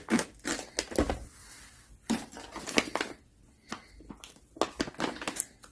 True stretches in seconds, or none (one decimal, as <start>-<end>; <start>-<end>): 0.0-5.7